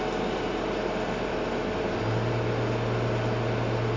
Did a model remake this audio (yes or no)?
no